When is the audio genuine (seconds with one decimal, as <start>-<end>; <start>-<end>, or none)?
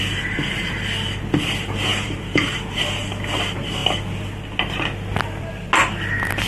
0.0-1.9; 3.1-6.5